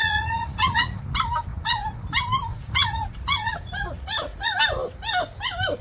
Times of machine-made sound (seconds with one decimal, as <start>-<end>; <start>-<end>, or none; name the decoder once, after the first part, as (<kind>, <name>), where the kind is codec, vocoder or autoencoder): 0.0-1.0 (vocoder, Vocos); 1.5-2.0; 2.5-4.6